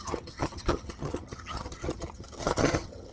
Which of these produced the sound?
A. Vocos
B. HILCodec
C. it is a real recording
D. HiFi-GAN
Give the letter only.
D